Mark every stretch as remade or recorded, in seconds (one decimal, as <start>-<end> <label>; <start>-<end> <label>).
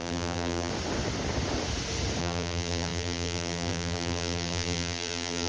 0.0-0.7 remade; 0.7-2.2 recorded; 2.2-5.5 remade